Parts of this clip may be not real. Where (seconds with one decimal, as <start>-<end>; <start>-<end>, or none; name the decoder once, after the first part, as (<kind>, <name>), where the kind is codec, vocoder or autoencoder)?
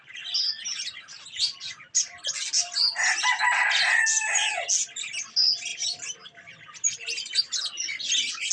none